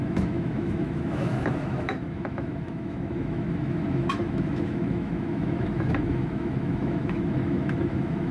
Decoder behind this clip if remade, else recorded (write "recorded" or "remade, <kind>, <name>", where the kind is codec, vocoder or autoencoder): remade, autoencoder, DAC-VAE